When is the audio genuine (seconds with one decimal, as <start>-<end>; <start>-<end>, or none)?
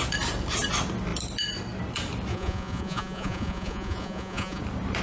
0.0-2.3; 4.6-5.0